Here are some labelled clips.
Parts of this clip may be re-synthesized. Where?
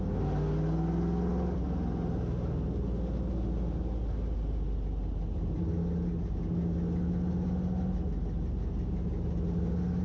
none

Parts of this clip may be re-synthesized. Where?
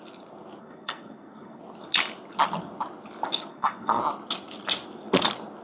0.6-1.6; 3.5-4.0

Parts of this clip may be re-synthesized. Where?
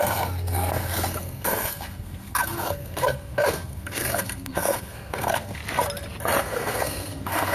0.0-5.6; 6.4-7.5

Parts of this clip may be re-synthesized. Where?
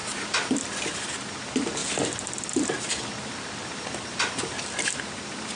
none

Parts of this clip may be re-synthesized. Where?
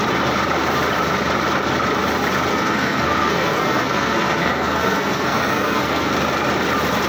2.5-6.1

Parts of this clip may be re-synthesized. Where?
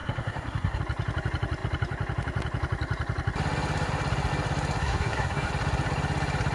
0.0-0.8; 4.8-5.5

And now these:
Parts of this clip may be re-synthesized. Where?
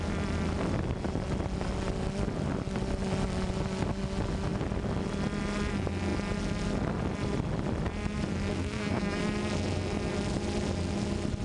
8.5-9.2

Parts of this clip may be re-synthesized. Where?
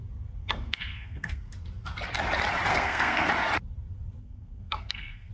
0.4-1.5; 2.7-3.3; 4.2-5.3